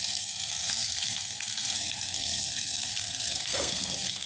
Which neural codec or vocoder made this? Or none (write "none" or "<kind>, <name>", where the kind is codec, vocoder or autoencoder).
codec, SNAC